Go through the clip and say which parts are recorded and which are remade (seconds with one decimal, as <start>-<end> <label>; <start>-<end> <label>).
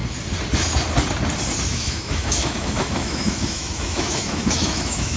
0.0-1.7 recorded; 1.7-5.2 remade